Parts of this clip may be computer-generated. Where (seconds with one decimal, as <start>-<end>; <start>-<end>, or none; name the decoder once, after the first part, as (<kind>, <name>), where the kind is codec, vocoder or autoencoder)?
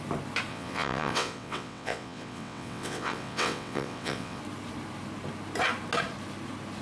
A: 0.5-4.4 (vocoder, WaveNeXt)